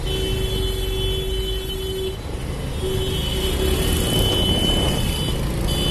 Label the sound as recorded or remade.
recorded